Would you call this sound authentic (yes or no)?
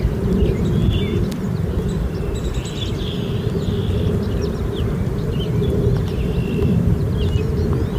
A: yes